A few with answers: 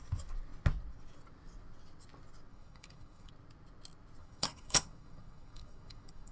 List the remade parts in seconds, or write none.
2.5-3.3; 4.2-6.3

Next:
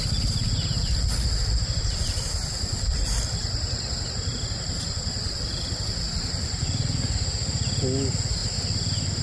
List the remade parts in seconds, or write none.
none

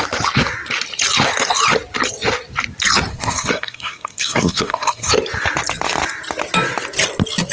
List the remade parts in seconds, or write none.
3.1-5.1